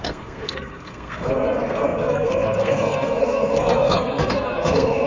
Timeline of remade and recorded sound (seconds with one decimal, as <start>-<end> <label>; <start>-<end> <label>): 0.0-5.1 remade